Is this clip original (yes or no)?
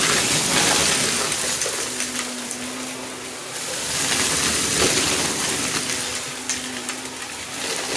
yes